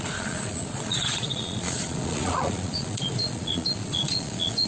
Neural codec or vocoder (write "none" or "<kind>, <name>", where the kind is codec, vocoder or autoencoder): vocoder, Vocos